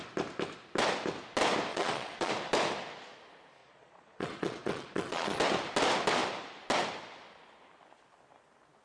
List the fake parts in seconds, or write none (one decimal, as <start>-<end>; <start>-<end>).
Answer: 1.7-2.3; 3.6-5.4

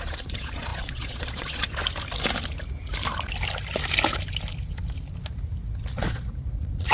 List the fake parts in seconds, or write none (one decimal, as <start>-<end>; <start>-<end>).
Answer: 0.0-1.8; 5.9-6.9